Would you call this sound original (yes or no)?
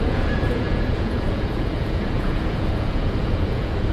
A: no